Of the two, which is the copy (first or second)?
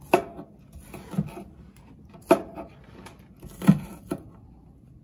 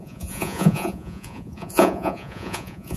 second